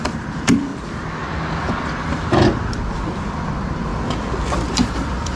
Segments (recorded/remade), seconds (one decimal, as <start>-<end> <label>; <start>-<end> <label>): 0.0-0.7 remade; 0.7-3.0 recorded; 3.0-3.9 remade; 3.9-4.6 recorded; 4.6-5.4 remade